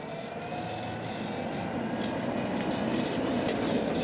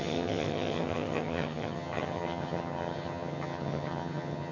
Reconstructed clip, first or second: second